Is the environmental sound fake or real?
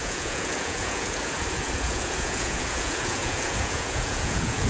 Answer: fake